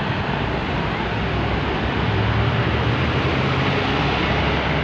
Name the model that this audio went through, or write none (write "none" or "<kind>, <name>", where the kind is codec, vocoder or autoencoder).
vocoder, BigVGAN v2